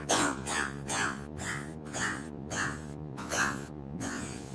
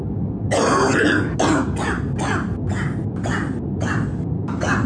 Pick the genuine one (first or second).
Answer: second